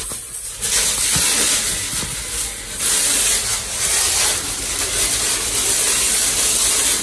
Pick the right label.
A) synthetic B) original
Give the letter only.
B